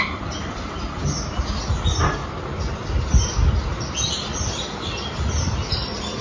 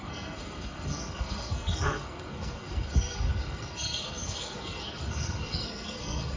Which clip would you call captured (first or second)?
first